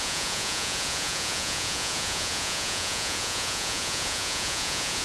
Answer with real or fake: fake